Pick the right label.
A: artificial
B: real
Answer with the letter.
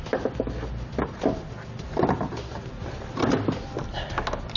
B